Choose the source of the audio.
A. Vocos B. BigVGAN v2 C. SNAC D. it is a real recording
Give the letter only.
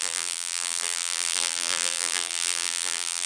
B